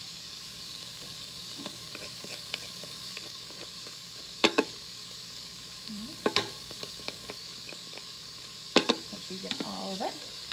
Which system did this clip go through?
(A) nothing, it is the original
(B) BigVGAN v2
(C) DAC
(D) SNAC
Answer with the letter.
C